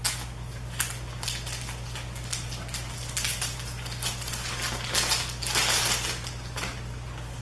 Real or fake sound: real